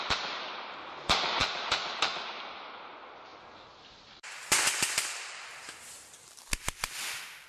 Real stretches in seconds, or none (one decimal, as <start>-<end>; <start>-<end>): 0.0-3.3; 6.4-7.5